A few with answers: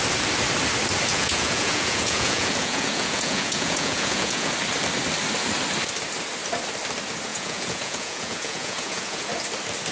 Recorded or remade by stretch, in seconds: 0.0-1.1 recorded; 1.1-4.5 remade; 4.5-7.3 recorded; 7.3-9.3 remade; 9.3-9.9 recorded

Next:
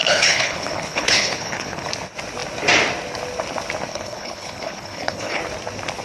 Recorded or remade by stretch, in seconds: 0.0-1.9 remade; 1.9-3.9 recorded; 3.9-5.4 remade; 5.4-6.0 recorded